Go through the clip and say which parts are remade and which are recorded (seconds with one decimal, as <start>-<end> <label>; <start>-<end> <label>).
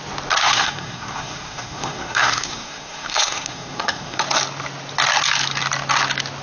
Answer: 0.0-0.4 recorded; 0.4-4.2 remade; 4.2-6.4 recorded